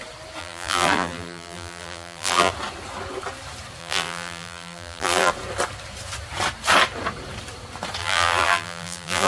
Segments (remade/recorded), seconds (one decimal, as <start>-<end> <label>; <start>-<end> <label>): 0.0-0.4 recorded; 0.4-2.5 remade; 2.5-3.8 recorded; 3.8-5.3 remade; 5.3-8.0 recorded; 8.0-9.3 remade